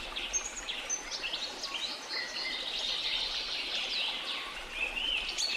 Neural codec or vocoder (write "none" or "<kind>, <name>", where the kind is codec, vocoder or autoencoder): none